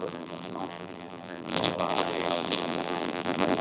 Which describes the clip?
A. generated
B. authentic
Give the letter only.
A